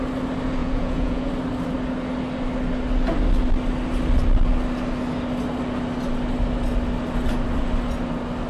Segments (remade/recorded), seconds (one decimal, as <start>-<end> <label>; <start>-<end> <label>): 0.0-0.6 recorded; 0.6-1.3 remade; 1.3-8.5 recorded